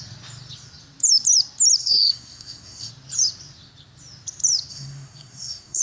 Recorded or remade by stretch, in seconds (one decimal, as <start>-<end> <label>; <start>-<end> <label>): 0.0-1.8 recorded; 1.8-2.9 remade; 2.9-4.7 recorded; 4.7-5.8 remade